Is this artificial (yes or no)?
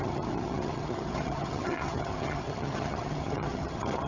yes